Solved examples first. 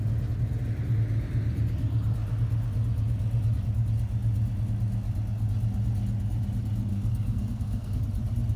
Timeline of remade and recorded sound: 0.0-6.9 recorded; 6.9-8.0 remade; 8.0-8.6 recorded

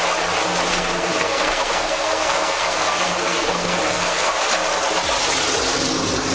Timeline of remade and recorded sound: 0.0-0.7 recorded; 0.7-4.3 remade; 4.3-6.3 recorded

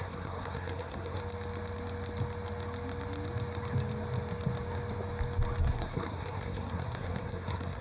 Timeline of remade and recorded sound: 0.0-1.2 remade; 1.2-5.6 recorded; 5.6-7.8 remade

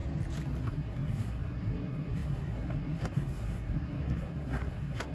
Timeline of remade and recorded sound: 0.0-0.6 recorded; 0.6-5.1 remade

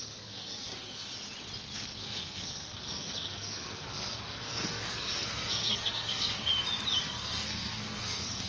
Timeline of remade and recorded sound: 0.0-1.1 remade; 1.1-2.0 recorded; 2.0-6.5 remade; 6.5-7.0 recorded; 7.0-8.5 remade